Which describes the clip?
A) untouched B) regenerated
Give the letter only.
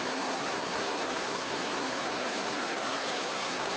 B